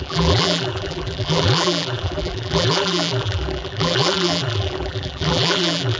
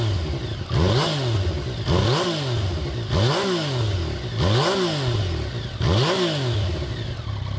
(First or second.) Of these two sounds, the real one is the second